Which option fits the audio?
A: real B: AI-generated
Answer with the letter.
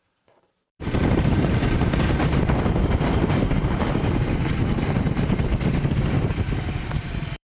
B